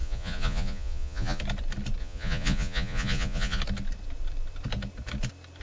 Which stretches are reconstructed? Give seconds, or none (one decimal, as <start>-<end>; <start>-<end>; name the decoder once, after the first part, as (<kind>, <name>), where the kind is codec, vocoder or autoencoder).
0.0-1.4 (vocoder, Vocos); 2.0-3.6